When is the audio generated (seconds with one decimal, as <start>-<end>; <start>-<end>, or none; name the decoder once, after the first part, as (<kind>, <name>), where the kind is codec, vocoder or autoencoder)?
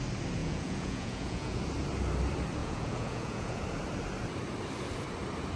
0.4-1.6 (vocoder, Vocos); 2.6-3.6